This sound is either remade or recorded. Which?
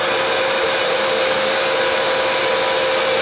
recorded